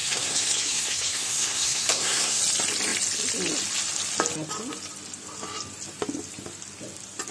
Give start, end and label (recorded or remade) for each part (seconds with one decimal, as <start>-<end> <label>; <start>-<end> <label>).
0.0-2.4 remade; 2.4-7.3 recorded